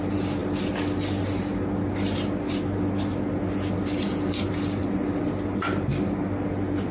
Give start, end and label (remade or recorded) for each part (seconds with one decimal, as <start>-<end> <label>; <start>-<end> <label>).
0.0-6.9 recorded